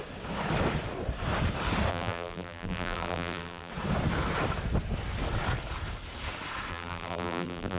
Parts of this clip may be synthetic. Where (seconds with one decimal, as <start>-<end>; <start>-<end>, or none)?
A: 1.9-3.7; 6.7-7.8